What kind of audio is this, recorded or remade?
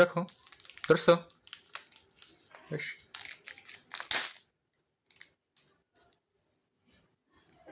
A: recorded